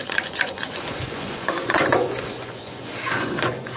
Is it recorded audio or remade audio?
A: remade